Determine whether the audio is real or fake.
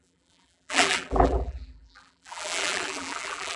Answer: fake